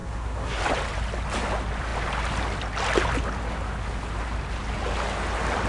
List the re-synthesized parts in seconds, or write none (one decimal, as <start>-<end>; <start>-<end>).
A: 0.0-0.6